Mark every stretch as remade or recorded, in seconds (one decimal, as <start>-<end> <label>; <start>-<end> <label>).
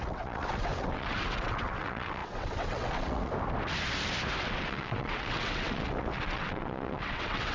0.0-3.3 remade; 3.3-4.4 recorded; 4.4-7.5 remade